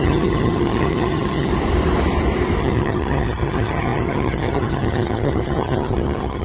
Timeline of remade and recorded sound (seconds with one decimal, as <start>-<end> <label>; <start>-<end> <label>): 0.0-1.5 remade; 1.5-2.6 recorded; 2.6-6.4 remade